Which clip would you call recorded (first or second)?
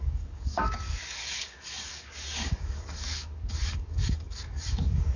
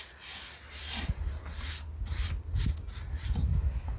second